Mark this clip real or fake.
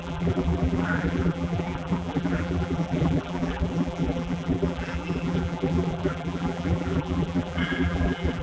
fake